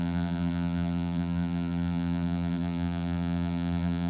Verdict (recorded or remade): remade